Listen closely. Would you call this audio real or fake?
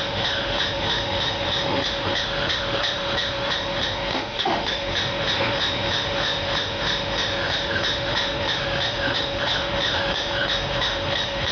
fake